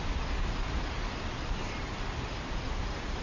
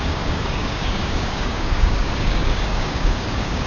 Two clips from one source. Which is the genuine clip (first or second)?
first